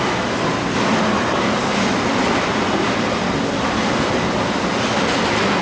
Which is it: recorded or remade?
recorded